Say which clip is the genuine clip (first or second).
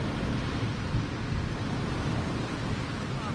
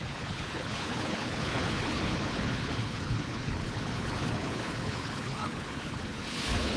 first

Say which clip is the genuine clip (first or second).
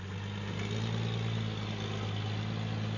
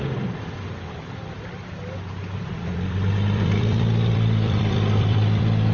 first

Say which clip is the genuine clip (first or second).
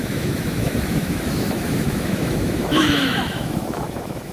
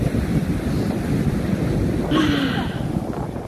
second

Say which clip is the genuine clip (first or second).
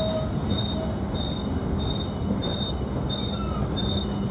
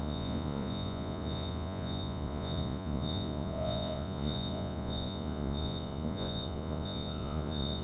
first